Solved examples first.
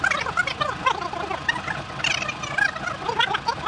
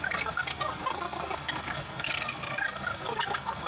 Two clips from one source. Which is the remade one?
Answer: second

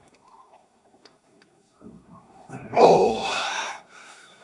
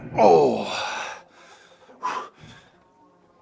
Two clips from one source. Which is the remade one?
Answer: first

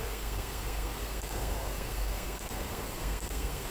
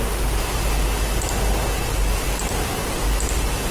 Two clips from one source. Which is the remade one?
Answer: first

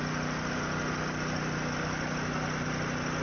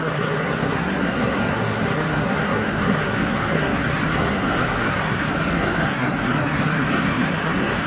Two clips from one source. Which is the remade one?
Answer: second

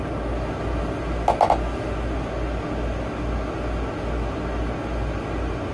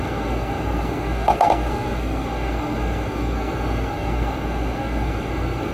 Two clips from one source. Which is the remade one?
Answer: second